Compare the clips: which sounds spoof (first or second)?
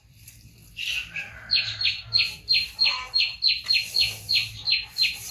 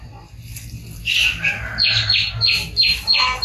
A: first